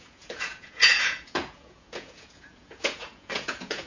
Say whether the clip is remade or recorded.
remade